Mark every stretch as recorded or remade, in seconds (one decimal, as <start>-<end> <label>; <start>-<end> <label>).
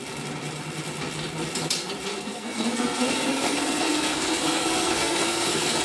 0.0-2.1 recorded; 2.1-5.8 remade